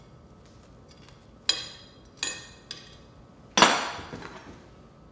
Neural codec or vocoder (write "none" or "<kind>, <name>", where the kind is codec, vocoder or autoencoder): none